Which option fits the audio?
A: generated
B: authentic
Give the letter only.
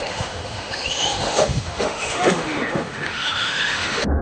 A